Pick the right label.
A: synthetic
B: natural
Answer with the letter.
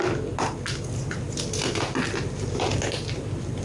B